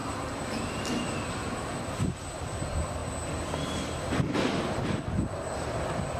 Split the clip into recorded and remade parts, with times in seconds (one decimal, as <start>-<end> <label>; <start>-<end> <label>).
0.0-6.2 recorded